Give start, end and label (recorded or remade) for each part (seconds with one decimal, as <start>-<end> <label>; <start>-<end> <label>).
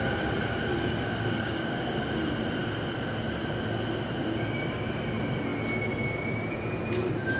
0.0-0.7 recorded; 0.7-1.9 remade; 1.9-7.4 recorded